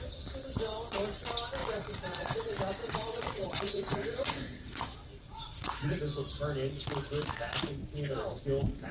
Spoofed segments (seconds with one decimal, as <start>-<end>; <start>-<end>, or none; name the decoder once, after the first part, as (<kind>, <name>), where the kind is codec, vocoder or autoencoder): 1.6-2.4 (vocoder, Vocos); 2.8-6.0